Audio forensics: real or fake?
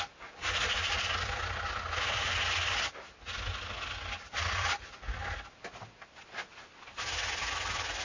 real